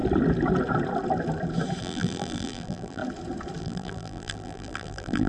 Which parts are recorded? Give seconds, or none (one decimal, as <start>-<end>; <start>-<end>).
0.0-1.8; 3.0-3.6